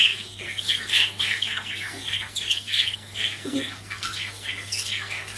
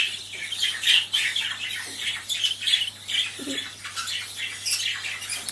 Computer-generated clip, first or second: first